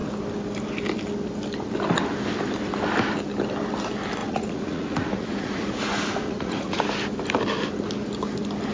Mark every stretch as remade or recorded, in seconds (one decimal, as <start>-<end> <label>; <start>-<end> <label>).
0.0-4.2 recorded; 4.2-6.8 remade; 6.8-8.7 recorded